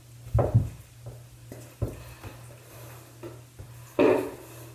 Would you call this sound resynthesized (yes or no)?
no